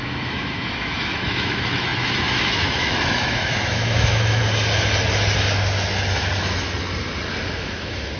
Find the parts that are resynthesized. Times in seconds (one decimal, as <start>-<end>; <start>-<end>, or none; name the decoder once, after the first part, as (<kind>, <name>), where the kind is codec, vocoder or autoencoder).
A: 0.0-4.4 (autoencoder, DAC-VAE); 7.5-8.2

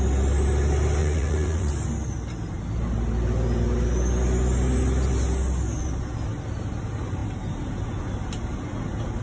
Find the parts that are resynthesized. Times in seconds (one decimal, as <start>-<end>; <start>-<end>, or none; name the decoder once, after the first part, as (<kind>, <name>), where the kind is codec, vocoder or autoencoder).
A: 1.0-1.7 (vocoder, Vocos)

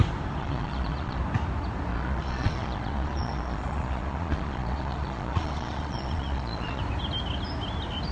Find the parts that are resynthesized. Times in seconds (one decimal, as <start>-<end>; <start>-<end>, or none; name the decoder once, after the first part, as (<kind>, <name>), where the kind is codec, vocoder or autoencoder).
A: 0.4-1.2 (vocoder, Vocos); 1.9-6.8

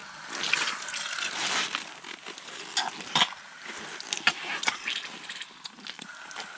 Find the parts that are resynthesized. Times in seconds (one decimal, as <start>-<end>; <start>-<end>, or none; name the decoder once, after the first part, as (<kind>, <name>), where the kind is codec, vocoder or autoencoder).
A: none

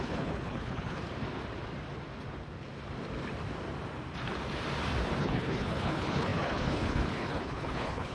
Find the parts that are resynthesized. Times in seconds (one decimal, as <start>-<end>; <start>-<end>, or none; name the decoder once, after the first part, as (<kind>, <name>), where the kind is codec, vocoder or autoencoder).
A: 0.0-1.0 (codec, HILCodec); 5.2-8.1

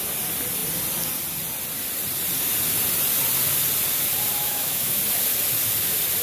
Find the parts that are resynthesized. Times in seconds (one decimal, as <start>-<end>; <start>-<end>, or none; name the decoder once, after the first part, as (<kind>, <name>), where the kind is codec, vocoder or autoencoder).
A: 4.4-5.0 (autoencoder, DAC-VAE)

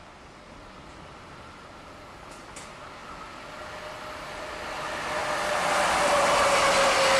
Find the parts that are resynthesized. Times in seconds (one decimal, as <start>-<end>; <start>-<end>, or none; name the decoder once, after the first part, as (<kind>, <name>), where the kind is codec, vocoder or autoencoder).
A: none